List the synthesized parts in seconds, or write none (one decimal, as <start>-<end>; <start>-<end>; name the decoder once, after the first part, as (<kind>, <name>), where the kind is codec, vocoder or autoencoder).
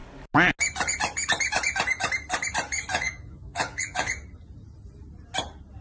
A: 2.9-4.1 (vocoder, Vocos)